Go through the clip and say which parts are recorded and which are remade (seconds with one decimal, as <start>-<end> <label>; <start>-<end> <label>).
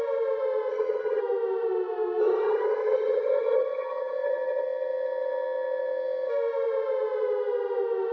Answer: 0.0-0.7 recorded; 0.7-1.2 remade; 1.2-2.2 recorded; 2.2-6.3 remade; 6.3-8.1 recorded